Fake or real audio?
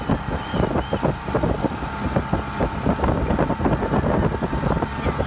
real